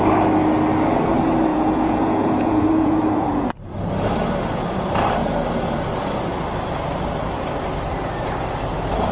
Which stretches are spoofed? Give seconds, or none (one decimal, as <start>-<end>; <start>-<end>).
1.5-3.6